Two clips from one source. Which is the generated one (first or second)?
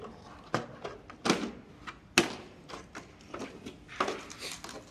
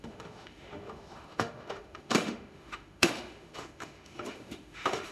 second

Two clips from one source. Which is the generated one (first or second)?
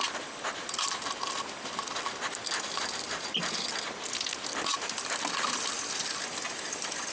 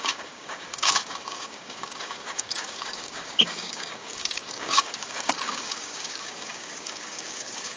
second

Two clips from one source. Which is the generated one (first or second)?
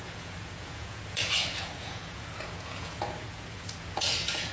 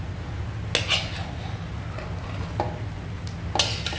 first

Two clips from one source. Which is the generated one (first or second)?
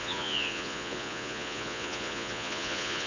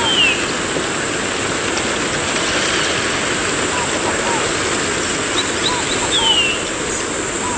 first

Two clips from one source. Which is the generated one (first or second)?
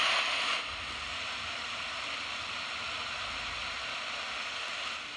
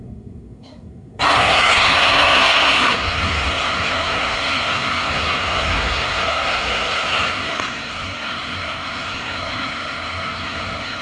second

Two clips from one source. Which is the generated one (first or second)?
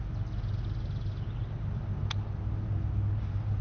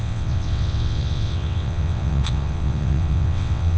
second